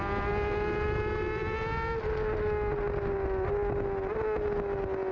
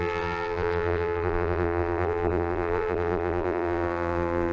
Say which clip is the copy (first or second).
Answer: second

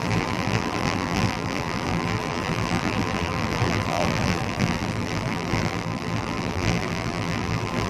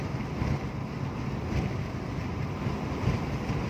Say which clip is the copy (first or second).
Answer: first